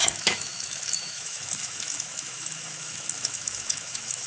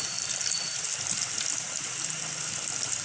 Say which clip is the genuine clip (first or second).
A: second